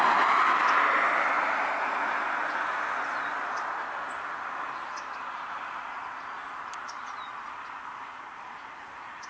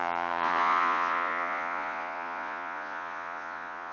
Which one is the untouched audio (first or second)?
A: first